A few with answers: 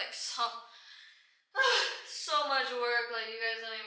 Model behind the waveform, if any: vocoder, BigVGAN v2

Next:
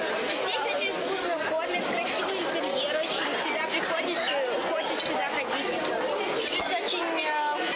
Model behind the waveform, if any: none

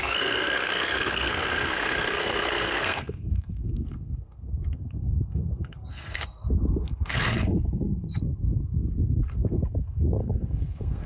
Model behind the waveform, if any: codec, SNAC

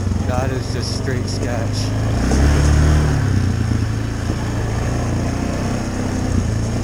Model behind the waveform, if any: none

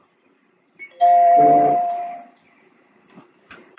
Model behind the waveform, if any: vocoder, BigVGAN v2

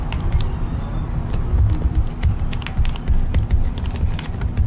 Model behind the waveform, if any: none